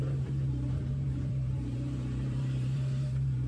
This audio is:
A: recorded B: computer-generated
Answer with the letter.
B